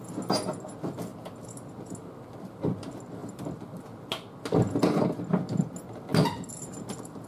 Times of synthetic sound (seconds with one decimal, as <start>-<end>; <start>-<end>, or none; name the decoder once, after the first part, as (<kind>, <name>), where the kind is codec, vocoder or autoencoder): 1.1-2.5 (vocoder, BigVGAN v2); 3.2-3.8; 6.1-7.3

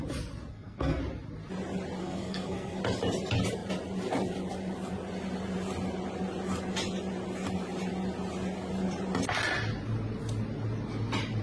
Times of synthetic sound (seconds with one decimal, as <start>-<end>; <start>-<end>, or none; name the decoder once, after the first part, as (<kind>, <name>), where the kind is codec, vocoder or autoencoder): 0.5-1.0 (codec, SNAC); 2.0-2.8